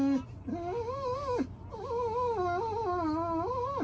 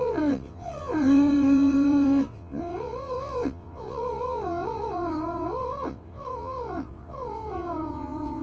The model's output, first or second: second